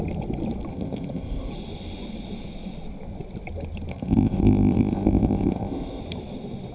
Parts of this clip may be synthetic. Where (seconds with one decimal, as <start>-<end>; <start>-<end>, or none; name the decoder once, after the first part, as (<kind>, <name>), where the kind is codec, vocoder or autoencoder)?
0.7-1.5 (codec, ZipCodec); 3.9-6.0